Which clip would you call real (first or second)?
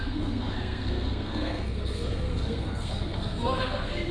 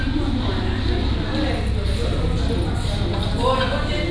second